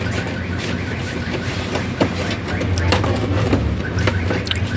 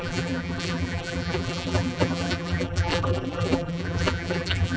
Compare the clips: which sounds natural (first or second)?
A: first